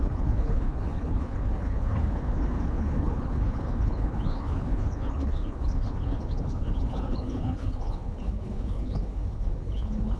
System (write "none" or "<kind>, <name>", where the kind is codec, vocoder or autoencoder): codec, HILCodec